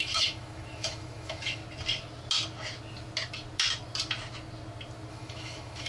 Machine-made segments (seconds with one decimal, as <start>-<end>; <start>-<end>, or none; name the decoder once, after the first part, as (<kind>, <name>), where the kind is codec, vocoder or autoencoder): 0.0-1.6 (autoencoder, DAC-VAE); 5.1-5.9